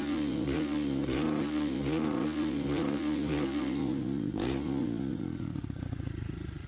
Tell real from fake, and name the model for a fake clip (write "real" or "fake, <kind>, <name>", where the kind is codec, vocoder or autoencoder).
fake, vocoder, Vocos